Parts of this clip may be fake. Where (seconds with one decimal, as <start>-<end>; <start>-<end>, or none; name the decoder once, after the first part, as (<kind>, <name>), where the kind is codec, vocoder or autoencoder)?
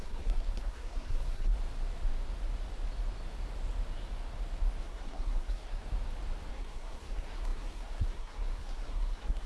0.0-1.5 (codec, SNAC); 4.8-5.8; 6.5-9.5